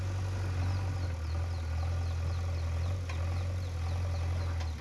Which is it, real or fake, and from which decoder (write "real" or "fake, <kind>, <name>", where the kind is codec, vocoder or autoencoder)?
real